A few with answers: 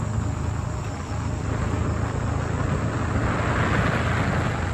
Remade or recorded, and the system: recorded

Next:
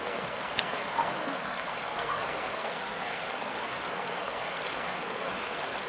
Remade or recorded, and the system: remade, codec, SNAC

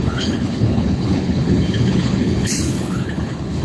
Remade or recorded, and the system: remade, codec, HILCodec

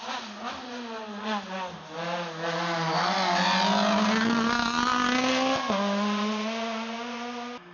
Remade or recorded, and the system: recorded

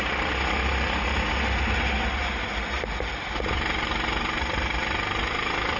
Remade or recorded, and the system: recorded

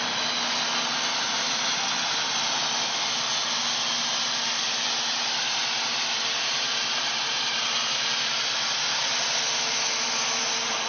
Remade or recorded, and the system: recorded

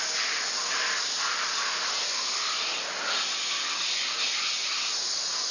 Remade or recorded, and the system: recorded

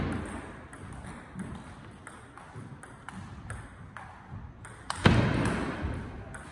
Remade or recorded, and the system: recorded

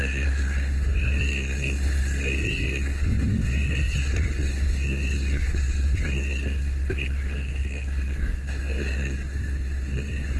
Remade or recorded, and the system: remade, codec, SNAC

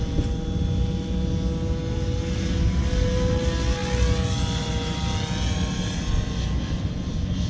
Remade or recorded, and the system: recorded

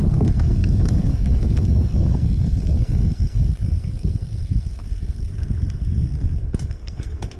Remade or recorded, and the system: remade, codec, SNAC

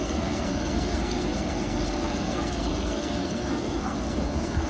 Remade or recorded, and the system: remade, codec, SNAC